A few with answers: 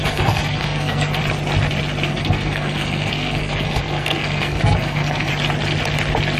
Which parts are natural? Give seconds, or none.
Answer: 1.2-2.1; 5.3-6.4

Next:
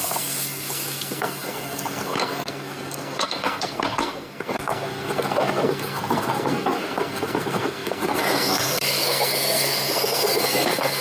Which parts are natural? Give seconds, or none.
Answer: none

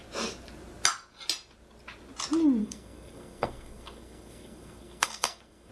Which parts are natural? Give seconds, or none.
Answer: 0.0-2.6

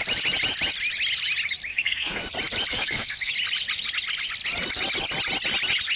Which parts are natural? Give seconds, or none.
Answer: 0.0-1.7; 2.2-2.7; 3.3-6.0

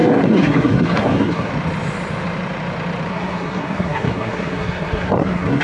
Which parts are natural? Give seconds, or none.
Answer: 1.5-3.1

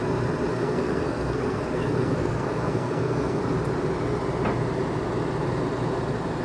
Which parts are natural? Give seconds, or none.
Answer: 0.0-0.5; 3.4-6.4

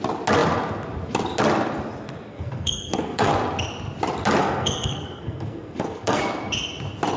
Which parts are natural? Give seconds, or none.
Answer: 0.0-2.3; 3.3-4.4; 6.2-7.2